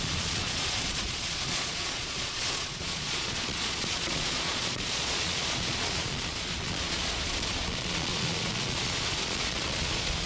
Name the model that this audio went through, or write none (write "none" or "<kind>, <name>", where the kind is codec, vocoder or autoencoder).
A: vocoder, Vocos